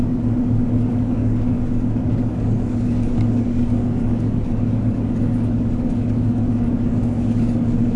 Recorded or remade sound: remade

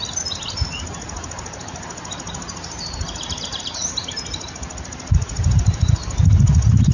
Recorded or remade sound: recorded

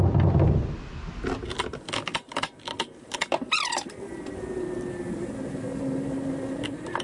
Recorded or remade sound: recorded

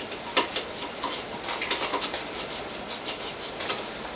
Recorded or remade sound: recorded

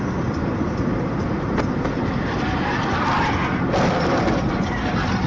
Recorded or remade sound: recorded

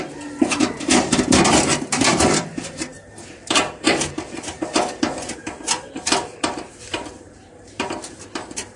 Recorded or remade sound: remade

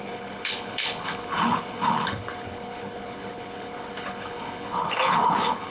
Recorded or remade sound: remade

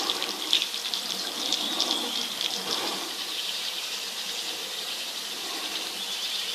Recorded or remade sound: remade